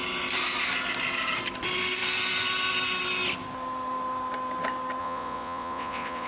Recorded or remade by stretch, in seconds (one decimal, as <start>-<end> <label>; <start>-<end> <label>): 0.0-5.0 recorded; 5.0-6.3 remade